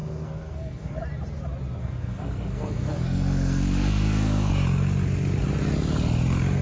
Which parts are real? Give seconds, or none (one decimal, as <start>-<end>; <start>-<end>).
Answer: 1.0-1.8; 4.5-6.6